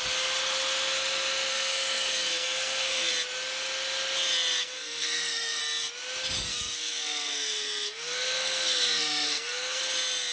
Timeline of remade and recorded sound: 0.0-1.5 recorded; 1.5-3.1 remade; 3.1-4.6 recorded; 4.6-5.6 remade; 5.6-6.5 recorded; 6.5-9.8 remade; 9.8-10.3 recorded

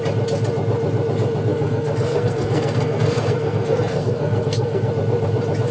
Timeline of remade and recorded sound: 0.0-1.5 recorded; 1.5-4.9 remade; 4.9-5.7 recorded

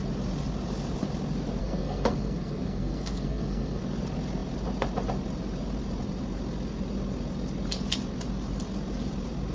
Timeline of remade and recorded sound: 0.0-1.6 recorded; 1.6-3.8 remade; 3.8-9.5 recorded

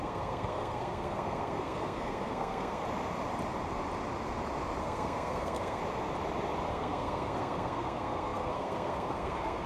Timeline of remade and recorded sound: 0.0-2.8 remade; 2.8-4.8 recorded; 4.8-5.8 remade; 5.8-6.7 recorded; 6.7-9.7 remade

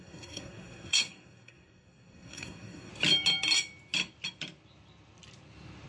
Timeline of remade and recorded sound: 0.0-2.9 remade; 2.9-5.9 recorded

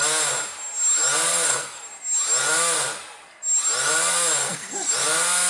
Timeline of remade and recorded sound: 0.0-1.3 recorded; 1.3-1.8 remade; 1.8-4.4 recorded; 4.4-4.9 remade; 4.9-5.5 recorded

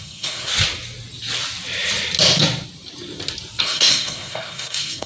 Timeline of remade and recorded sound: 0.0-0.5 remade; 0.5-3.6 recorded; 3.6-5.1 remade

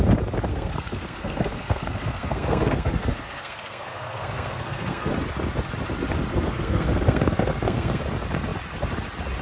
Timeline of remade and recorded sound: 0.0-0.5 recorded; 0.5-5.1 remade; 5.1-6.3 recorded; 6.3-8.0 remade; 8.0-9.4 recorded